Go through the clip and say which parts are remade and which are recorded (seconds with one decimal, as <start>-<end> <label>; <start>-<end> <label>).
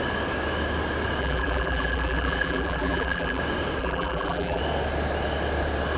0.0-1.2 recorded; 1.2-3.4 remade; 3.4-3.8 recorded; 3.8-4.6 remade; 4.6-6.0 recorded